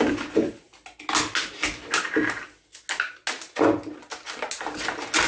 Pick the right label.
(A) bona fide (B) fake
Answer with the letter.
A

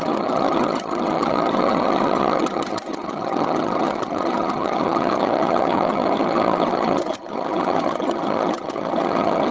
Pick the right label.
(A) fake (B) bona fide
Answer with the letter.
A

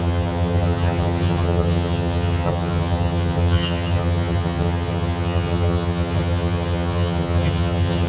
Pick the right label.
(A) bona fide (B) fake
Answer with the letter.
B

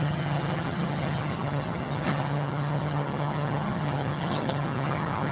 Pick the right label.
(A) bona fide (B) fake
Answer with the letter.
B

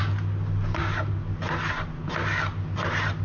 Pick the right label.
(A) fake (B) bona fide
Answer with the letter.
B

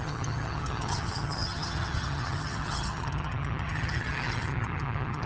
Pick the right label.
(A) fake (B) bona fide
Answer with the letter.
A